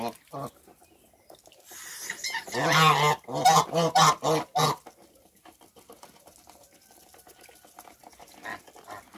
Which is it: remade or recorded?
recorded